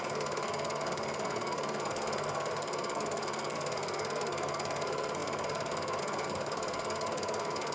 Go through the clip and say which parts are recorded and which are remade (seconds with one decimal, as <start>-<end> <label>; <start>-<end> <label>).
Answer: 0.0-7.7 remade